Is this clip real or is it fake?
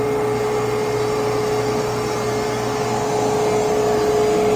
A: real